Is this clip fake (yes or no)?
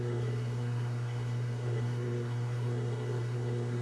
yes